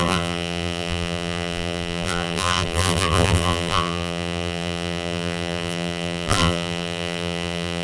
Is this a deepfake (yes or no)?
yes